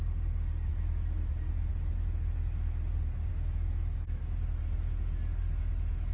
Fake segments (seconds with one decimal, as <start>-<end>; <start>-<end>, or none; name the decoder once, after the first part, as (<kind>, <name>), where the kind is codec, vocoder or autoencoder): 0.7-1.7 (autoencoder, DAC-VAE); 3.3-4.2